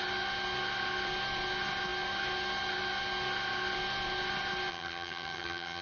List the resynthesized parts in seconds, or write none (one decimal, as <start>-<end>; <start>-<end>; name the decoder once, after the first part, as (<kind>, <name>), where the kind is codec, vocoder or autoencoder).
4.7-5.8 (vocoder, HiFi-GAN)